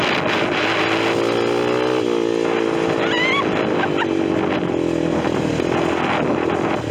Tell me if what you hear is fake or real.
real